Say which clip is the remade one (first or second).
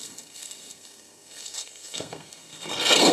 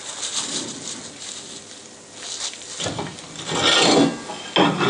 first